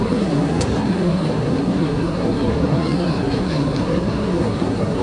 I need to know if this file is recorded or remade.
remade